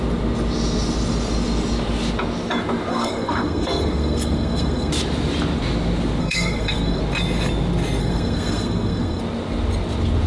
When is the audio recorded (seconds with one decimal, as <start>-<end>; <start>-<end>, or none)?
0.0-2.9; 4.9-6.2; 7.0-8.0; 9.2-10.3